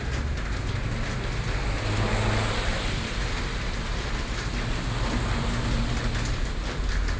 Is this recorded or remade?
recorded